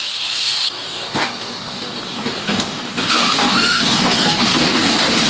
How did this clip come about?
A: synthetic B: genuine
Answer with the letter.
A